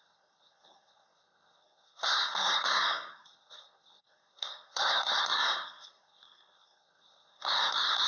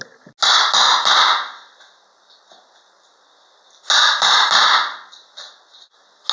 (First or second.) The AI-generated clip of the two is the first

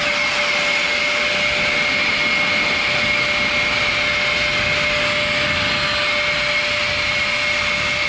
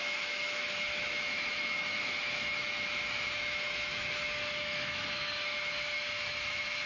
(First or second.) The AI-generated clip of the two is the second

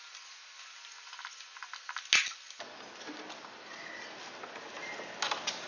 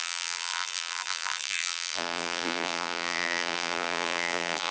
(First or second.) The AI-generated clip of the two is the second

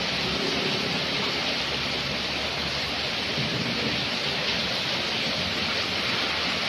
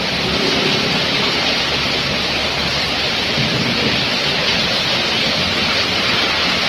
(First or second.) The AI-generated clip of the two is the first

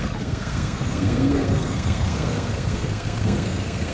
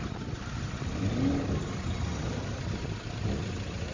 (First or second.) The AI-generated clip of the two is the first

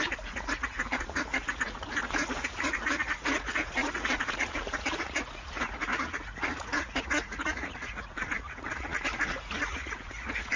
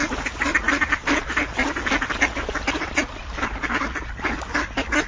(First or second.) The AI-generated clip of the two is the first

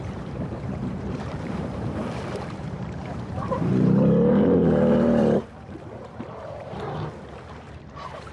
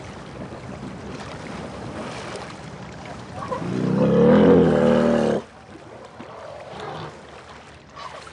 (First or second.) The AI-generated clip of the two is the first